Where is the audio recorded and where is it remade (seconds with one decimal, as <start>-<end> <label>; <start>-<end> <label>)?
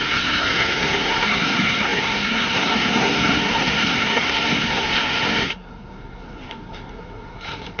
0.0-7.8 remade